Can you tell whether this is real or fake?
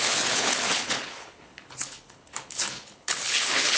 fake